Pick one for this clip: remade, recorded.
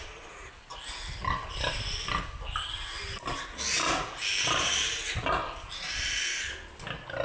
recorded